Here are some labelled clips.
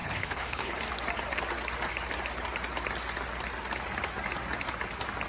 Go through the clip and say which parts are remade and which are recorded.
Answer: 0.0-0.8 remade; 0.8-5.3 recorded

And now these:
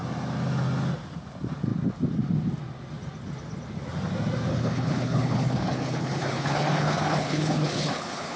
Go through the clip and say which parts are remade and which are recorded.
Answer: 0.0-4.5 recorded; 4.5-8.4 remade

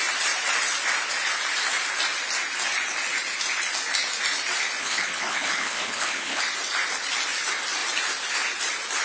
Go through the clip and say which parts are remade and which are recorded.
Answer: 0.0-4.8 recorded; 4.8-6.4 remade; 6.4-9.0 recorded

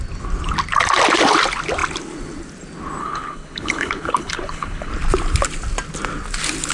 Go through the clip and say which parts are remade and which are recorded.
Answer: 0.0-3.0 recorded; 3.0-4.9 remade; 4.9-6.7 recorded

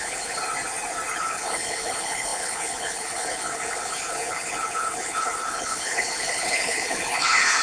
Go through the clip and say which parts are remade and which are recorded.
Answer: 0.0-0.4 remade; 0.4-1.2 recorded; 1.2-7.6 remade

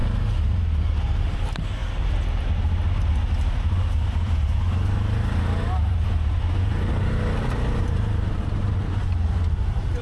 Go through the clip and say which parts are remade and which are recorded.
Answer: 0.0-10.0 recorded

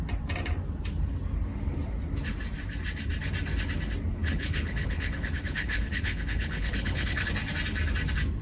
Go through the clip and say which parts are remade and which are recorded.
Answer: 0.0-4.1 recorded; 4.1-7.3 remade; 7.3-8.4 recorded